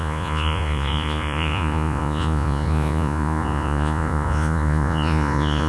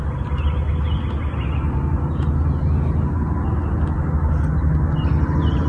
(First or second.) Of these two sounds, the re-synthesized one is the first